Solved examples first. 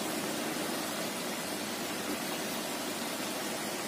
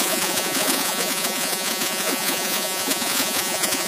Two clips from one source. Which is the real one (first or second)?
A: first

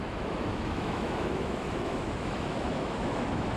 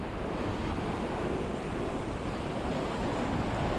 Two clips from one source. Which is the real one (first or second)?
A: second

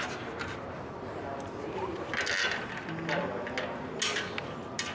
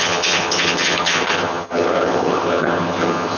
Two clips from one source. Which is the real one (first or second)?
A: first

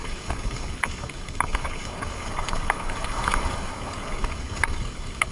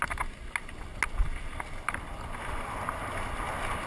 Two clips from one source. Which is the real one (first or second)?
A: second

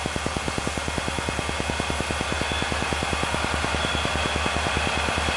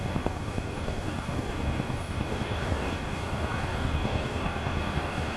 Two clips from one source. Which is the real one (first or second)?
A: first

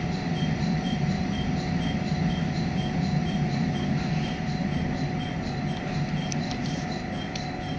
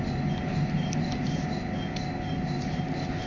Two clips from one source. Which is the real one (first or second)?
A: second